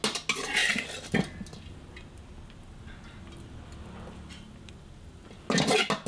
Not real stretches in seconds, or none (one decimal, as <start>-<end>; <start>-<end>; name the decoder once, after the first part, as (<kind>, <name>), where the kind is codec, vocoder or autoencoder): none